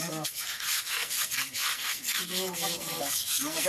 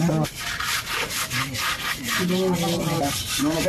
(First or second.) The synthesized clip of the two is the first